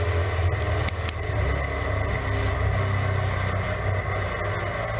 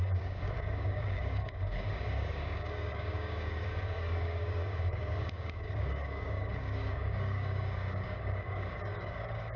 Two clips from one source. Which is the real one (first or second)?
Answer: first